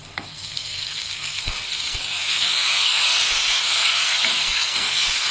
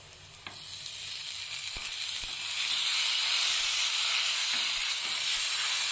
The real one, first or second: second